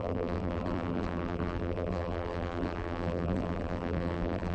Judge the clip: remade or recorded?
remade